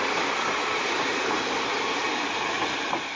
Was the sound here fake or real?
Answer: real